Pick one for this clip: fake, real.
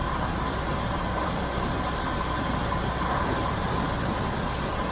fake